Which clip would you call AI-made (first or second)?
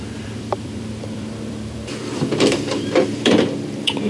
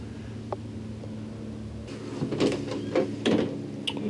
first